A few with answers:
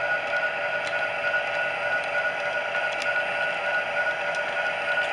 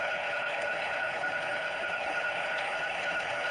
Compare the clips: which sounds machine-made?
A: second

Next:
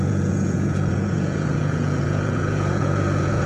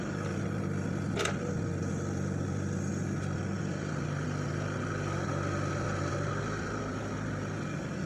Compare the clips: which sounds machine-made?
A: first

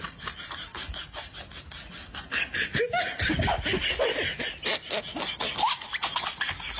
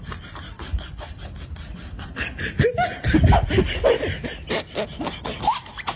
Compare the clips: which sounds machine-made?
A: second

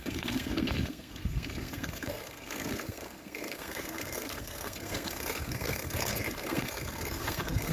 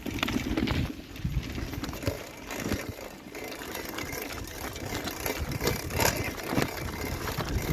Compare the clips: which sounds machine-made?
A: first